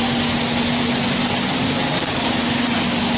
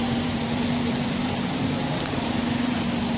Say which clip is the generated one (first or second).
second